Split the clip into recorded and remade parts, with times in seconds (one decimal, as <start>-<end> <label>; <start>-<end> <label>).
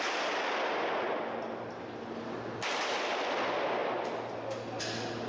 0.0-5.3 recorded